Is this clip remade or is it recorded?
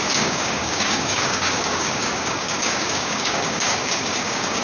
remade